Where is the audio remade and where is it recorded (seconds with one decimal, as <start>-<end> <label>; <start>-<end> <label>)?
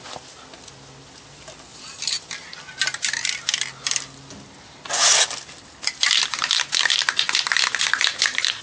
0.0-8.6 recorded